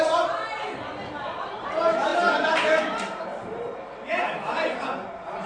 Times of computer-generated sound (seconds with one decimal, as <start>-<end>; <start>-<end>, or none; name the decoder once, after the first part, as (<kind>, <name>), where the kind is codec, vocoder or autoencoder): none